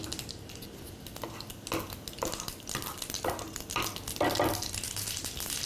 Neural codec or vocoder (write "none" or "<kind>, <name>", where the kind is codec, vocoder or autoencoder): none